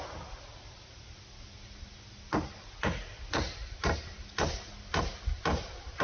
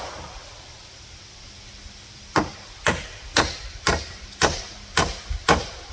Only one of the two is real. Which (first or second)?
first